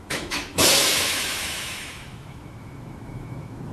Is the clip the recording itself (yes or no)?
no